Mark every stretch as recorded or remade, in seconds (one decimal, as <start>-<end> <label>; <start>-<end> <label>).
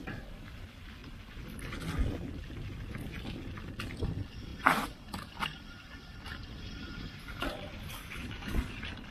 0.0-4.5 recorded; 4.5-8.3 remade; 8.3-9.1 recorded